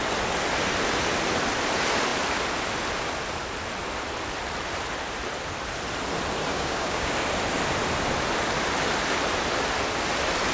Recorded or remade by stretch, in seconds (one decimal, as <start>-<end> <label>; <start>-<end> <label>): 0.0-6.5 recorded; 6.5-7.1 remade; 7.1-10.5 recorded